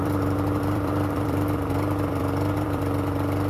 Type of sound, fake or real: fake